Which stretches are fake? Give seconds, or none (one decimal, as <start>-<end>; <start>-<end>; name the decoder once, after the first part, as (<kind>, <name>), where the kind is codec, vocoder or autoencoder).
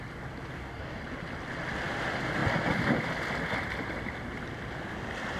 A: 0.5-1.0 (codec, DAC)